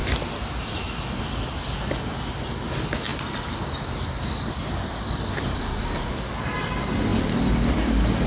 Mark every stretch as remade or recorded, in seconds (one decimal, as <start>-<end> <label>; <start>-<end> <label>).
0.0-8.3 recorded